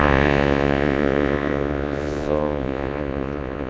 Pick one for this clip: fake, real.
fake